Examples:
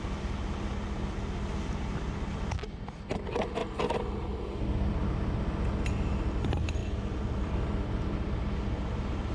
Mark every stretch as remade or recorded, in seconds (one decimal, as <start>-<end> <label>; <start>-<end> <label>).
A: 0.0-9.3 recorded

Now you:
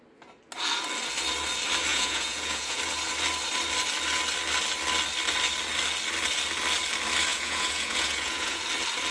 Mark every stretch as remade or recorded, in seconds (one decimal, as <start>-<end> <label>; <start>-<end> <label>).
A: 0.0-1.9 recorded; 1.9-2.8 remade; 2.8-7.3 recorded; 7.3-8.6 remade; 8.6-9.1 recorded

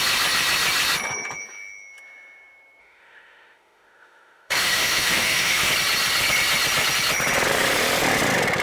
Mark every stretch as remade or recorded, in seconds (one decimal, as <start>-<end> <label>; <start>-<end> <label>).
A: 0.0-2.8 recorded; 2.8-5.7 remade; 5.7-8.6 recorded

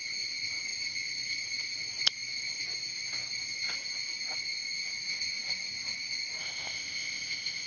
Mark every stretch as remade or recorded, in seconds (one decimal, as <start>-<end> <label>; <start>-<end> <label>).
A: 0.0-6.4 recorded; 6.4-7.7 remade